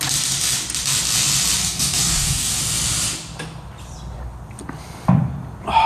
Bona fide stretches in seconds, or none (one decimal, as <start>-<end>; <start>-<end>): 0.0-1.6; 2.6-5.9